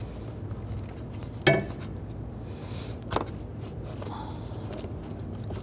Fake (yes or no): no